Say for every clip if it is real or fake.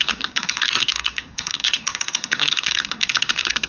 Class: fake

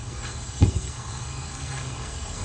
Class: fake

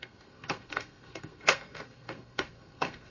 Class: fake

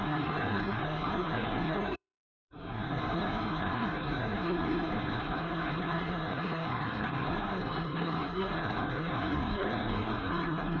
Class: fake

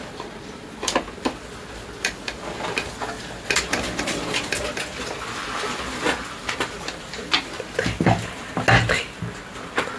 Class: real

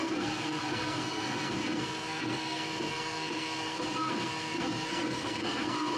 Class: fake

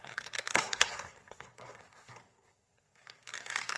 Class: fake